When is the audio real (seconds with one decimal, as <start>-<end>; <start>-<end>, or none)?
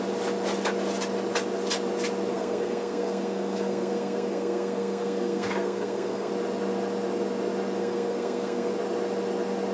0.0-2.3; 6.3-7.8; 8.7-9.7